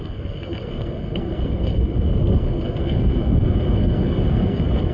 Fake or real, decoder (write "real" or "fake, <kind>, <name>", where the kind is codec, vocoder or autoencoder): fake, codec, SNAC